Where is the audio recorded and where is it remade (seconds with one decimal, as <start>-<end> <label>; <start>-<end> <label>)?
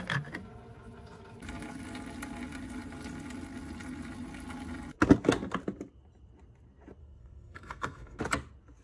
0.0-7.0 recorded; 7.0-8.2 remade; 8.2-8.8 recorded